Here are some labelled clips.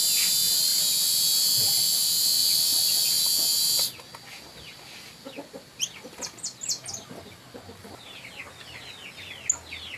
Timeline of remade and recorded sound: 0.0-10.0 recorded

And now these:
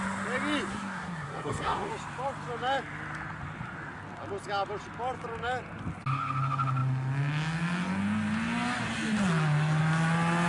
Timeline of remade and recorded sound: 0.0-0.7 recorded; 0.7-1.9 remade; 1.9-10.5 recorded

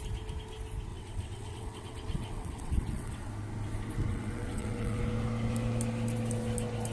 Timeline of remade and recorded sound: 0.0-0.9 recorded; 0.9-3.3 remade; 3.3-4.1 recorded; 4.1-5.0 remade; 5.0-6.9 recorded